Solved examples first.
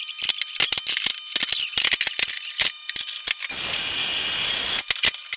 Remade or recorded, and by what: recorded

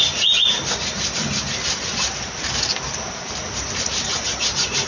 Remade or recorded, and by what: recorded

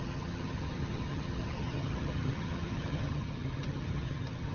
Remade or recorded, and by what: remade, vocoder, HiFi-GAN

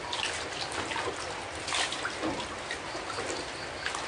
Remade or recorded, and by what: recorded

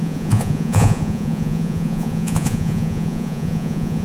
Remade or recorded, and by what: remade, vocoder, Vocos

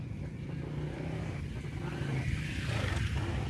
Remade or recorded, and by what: recorded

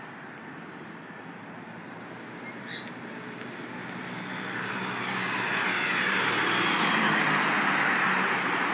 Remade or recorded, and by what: recorded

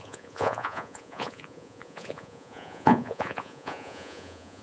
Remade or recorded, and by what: remade, vocoder, Vocos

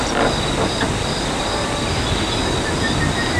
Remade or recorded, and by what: recorded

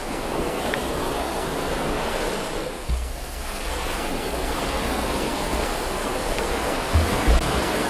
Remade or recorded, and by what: remade, codec, SNAC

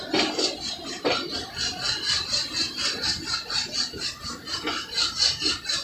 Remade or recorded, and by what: recorded